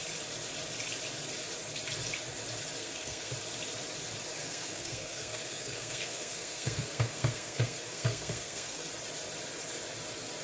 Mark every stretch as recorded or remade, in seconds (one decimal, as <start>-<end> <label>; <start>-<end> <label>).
0.0-2.8 recorded; 2.8-3.3 remade; 3.3-4.4 recorded; 4.4-8.9 remade; 8.9-10.4 recorded